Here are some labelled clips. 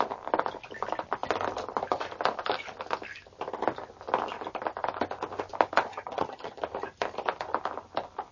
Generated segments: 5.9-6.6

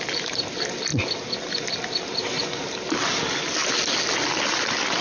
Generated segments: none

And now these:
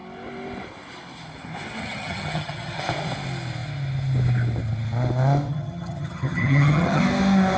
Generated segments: 1.8-2.8; 5.5-7.0

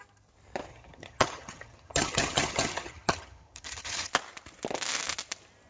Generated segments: 0.7-4.1

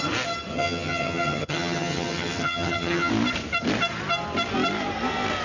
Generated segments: 0.5-3.1

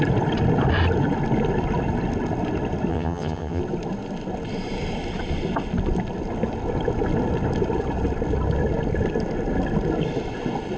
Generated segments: 2.9-3.6